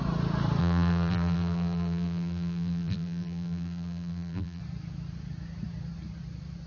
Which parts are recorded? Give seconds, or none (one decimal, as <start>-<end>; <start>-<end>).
0.0-0.6; 4.6-6.7